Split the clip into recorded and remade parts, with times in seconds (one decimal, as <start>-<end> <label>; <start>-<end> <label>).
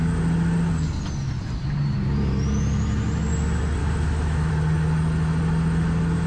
0.0-3.8 recorded; 3.8-4.5 remade; 4.5-6.3 recorded